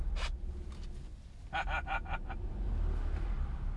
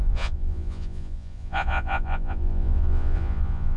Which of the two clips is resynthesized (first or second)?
second